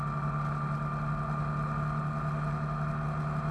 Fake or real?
real